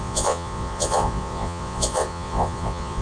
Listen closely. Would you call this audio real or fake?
fake